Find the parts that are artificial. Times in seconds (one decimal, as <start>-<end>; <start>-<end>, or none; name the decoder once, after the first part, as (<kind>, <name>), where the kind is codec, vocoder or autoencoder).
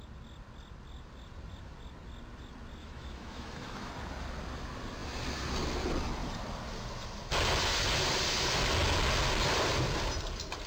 2.8-3.9 (autoencoder, DAC-VAE)